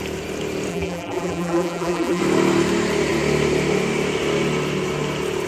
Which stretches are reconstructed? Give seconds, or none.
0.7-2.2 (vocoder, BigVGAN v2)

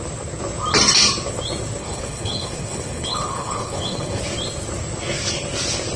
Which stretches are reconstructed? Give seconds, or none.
1.8-4.2 (codec, HILCodec)

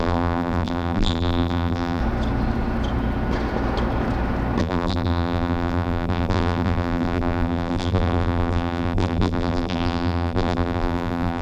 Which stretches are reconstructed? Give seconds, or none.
0.0-2.0 (vocoder, BigVGAN v2); 4.6-11.4

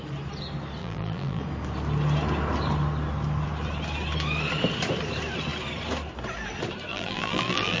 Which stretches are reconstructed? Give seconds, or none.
0.8-1.4 (vocoder, BigVGAN v2); 6.9-7.8

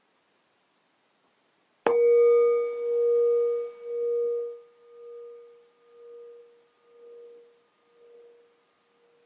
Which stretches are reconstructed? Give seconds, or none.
none